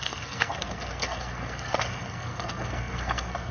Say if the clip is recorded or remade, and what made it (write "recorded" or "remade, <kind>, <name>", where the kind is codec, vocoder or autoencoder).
remade, codec, SNAC